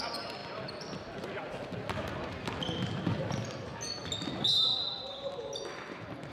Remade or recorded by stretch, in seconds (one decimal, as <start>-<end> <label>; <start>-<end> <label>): 0.0-6.3 recorded